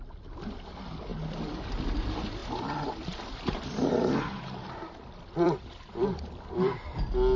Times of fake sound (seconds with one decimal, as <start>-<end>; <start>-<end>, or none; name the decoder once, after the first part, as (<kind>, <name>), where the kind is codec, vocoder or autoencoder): 1.1-1.6 (vocoder, BigVGAN v2); 2.4-6.8